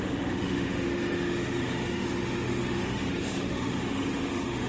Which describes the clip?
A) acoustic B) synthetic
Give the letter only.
B